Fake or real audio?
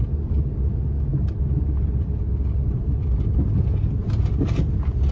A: real